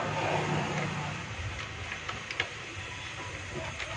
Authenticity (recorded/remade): recorded